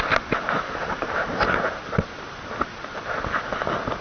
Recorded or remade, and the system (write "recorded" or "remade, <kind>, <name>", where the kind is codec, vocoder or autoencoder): recorded